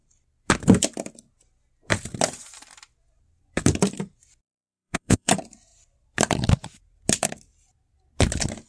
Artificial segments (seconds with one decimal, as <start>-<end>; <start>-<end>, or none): 4.4-5.3